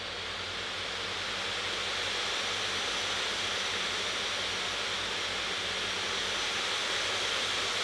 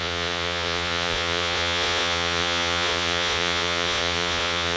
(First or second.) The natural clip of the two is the first